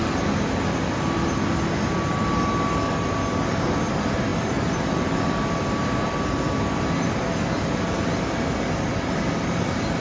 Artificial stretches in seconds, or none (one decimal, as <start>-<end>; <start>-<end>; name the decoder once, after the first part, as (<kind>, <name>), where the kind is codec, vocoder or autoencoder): none

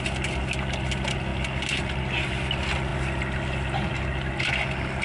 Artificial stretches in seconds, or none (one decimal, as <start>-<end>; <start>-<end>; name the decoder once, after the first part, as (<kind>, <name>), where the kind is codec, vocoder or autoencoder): none

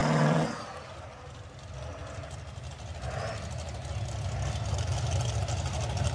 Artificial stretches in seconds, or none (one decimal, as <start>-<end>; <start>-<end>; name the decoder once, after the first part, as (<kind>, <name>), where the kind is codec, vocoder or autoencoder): 0.0-0.7 (vocoder, WaveNeXt)

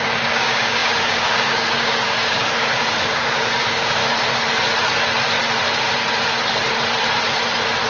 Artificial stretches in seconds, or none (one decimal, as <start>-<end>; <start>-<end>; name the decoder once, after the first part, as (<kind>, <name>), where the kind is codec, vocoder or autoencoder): 0.0-4.0 (codec, DAC)

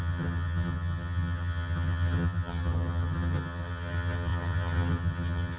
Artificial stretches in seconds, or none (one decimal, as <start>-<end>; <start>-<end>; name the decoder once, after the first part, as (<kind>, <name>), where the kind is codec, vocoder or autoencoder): 0.0-5.6 (vocoder, HiFi-GAN)

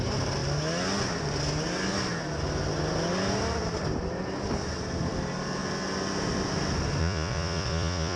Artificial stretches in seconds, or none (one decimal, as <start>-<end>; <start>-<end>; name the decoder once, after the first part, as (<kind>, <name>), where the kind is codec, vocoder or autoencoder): 7.0-8.2 (vocoder, Vocos)